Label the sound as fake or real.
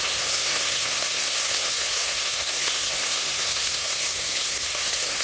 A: fake